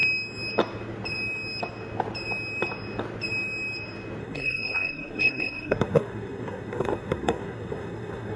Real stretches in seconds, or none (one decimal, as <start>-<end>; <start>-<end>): 0.0-4.2